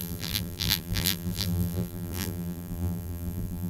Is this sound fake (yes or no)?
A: yes